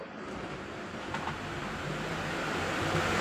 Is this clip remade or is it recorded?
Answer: remade